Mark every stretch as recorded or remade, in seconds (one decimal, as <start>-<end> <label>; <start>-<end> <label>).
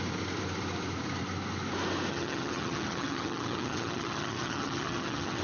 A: 0.0-2.1 recorded; 2.1-5.4 remade